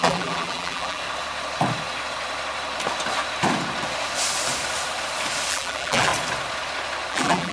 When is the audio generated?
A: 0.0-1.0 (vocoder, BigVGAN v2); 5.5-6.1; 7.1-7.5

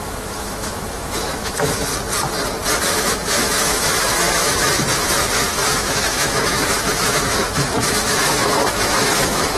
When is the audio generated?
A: 0.0-1.9 (autoencoder, DAC-VAE); 2.8-9.6

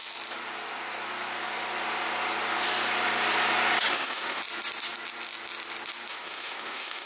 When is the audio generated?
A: 3.9-4.4 (autoencoder, DAC-VAE); 6.1-7.1

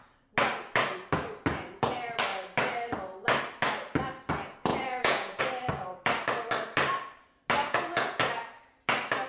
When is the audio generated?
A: 4.7-5.4 (vocoder, Vocos); 7.6-8.2

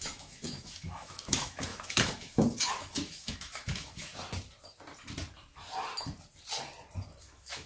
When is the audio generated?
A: 0.0-4.1 (autoencoder, DAC-VAE); 7.2-7.7

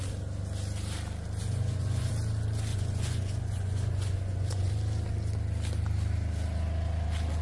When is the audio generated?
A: 1.4-2.1 (vocoder, Vocos); 2.7-4.7

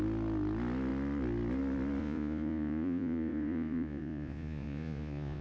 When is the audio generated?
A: 2.0-5.4 (vocoder, Vocos)

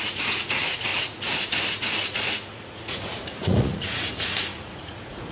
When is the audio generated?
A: 0.0-5.3 (vocoder, Vocos)